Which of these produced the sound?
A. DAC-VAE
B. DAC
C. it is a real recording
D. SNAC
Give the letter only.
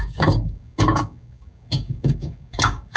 B